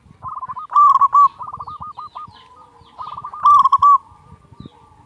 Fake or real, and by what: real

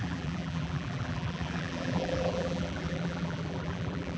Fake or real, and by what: fake, vocoder, BigVGAN v2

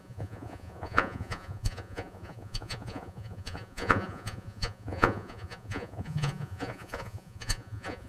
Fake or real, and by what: fake, vocoder, Vocos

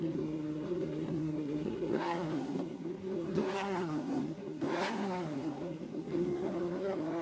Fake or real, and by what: fake, codec, SNAC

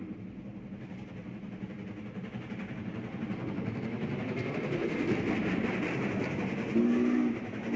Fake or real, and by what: real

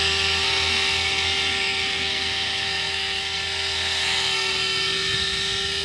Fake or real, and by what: fake, codec, SNAC